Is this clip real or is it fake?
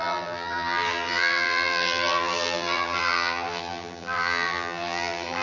fake